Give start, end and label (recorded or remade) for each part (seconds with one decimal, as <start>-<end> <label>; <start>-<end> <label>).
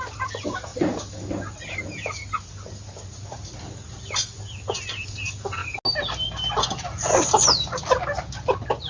0.0-8.9 recorded